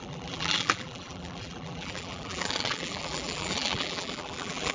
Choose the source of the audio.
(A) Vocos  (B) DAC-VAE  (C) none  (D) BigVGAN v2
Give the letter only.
D